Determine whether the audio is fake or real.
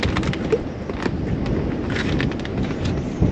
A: real